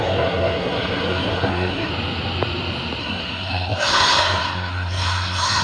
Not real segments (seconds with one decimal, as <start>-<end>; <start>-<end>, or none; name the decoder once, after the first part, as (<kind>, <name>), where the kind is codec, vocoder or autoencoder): 0.0-1.9 (codec, SNAC); 3.0-5.6